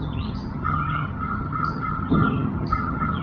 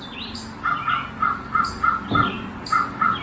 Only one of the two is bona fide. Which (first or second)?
second